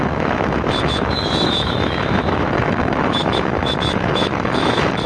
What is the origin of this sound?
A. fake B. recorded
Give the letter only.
A